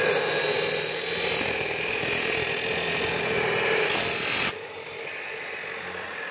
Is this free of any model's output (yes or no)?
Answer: yes